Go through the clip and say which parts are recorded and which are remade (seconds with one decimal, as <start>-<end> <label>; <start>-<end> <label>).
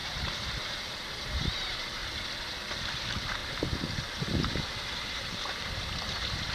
0.0-2.0 remade; 2.0-2.8 recorded; 2.8-3.4 remade; 3.4-5.1 recorded; 5.1-6.5 remade